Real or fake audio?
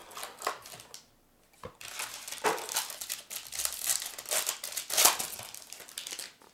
real